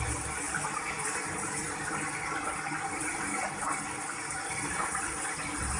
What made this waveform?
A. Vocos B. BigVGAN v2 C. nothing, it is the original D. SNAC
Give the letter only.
C